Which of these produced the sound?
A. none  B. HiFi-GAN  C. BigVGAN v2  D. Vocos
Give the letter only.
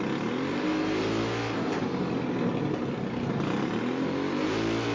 A